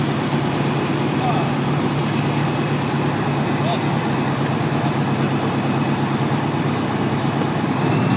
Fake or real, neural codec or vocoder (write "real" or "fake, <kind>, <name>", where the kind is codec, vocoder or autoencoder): real